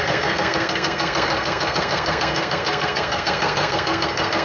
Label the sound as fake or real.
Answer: fake